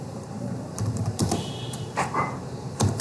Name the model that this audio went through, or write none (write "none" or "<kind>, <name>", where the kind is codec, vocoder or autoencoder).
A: vocoder, BigVGAN v2